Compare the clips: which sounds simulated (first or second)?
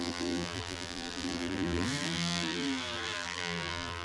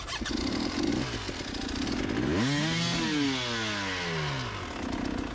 first